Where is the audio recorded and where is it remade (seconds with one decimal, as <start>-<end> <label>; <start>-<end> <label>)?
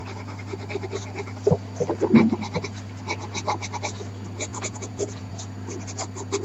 0.0-4.5 recorded; 4.5-5.3 remade; 5.3-6.4 recorded